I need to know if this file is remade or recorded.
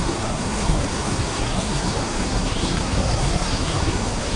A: remade